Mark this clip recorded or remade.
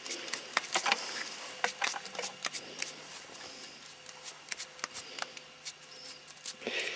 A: recorded